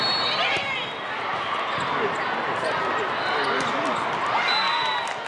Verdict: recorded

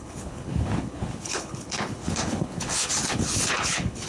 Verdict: remade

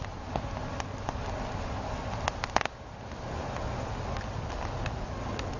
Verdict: recorded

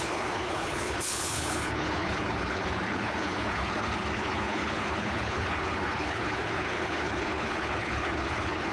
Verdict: remade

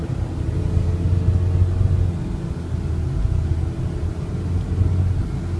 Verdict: recorded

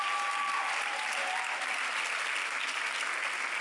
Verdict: recorded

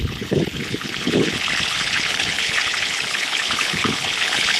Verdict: remade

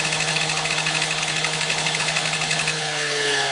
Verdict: remade